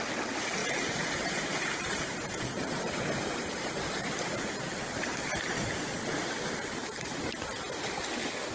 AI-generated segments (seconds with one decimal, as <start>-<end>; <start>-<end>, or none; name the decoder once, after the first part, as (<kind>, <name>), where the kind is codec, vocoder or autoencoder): 0.6-5.2 (vocoder, BigVGAN v2); 6.8-7.3